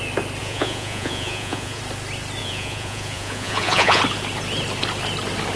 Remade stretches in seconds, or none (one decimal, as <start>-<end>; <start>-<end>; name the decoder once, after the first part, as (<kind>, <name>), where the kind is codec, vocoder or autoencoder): 0.4-1.8 (vocoder, Vocos); 2.4-4.0